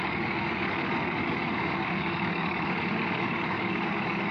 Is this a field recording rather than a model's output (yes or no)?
no